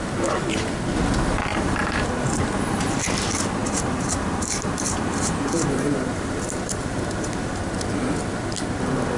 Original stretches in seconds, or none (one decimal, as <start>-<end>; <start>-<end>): 0.0-1.5; 3.0-3.6; 7.6-9.2